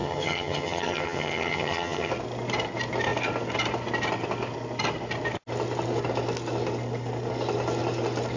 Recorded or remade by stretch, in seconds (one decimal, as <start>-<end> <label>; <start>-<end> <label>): 0.0-2.1 remade; 2.1-8.4 recorded